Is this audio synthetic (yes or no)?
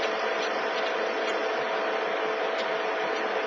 no